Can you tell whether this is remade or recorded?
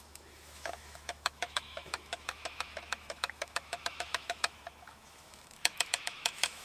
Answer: remade